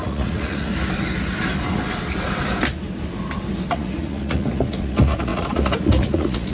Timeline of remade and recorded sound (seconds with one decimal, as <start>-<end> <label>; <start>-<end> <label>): 0.0-0.7 remade; 0.7-3.7 recorded; 3.7-6.5 remade